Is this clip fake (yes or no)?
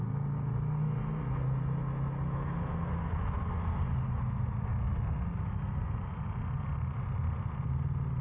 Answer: no